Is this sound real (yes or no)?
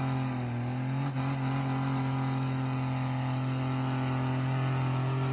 yes